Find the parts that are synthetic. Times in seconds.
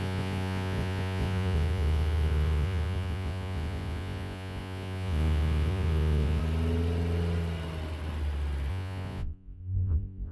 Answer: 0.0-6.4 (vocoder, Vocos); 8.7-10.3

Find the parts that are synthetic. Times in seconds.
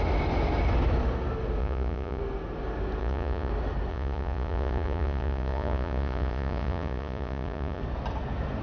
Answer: 1.6-2.2 (vocoder, Vocos); 3.0-3.5; 3.9-7.8